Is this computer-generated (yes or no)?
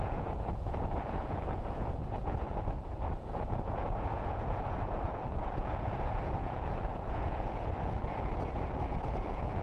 yes